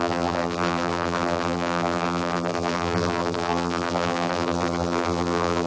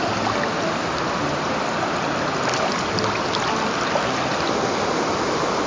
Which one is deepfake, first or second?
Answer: first